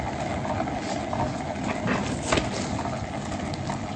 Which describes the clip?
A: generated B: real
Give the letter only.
B